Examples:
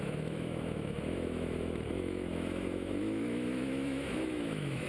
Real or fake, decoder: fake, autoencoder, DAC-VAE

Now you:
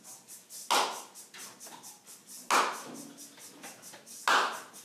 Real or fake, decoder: real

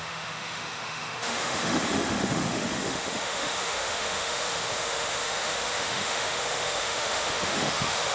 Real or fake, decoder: fake, autoencoder, DAC-VAE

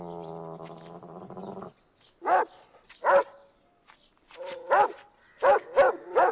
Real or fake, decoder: real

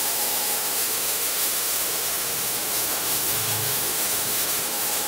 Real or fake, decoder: fake, autoencoder, DAC-VAE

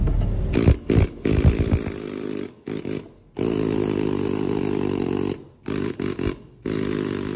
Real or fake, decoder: real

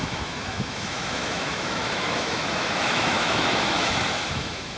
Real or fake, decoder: fake, autoencoder, DAC-VAE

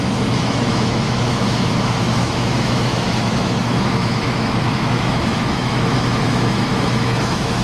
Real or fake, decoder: fake, autoencoder, DAC-VAE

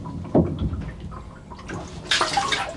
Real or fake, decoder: real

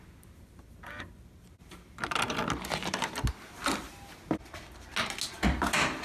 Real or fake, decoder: real